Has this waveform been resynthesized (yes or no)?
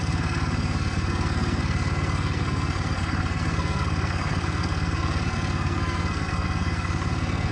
yes